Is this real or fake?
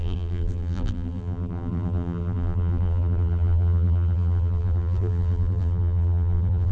fake